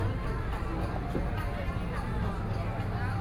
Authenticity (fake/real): real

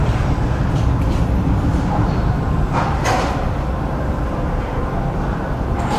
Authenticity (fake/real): real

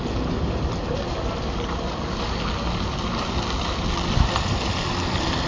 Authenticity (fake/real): real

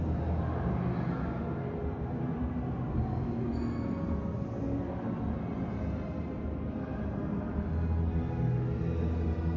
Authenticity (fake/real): real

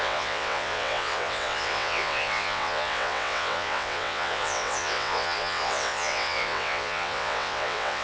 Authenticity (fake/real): fake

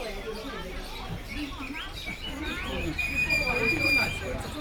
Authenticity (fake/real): real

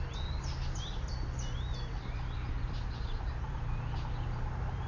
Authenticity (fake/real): real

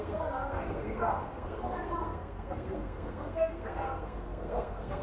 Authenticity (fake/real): fake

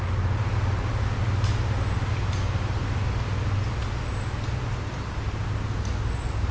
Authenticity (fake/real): real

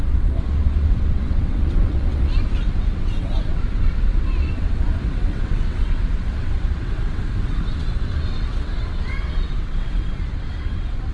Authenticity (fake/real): fake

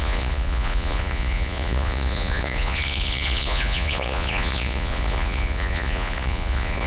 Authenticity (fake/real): fake